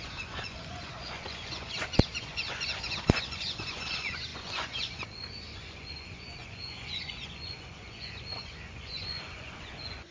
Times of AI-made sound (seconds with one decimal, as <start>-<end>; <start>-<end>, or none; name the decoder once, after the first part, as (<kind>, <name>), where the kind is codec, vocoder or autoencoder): 0.0-10.1 (vocoder, Vocos)